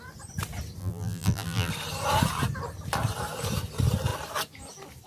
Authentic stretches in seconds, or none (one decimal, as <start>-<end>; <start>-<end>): 0.0-0.8; 1.7-5.1

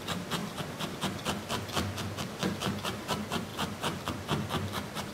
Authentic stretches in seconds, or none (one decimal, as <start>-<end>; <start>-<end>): 0.0-5.1